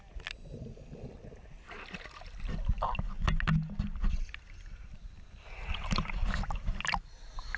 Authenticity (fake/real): real